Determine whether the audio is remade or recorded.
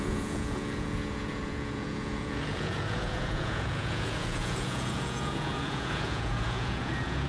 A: remade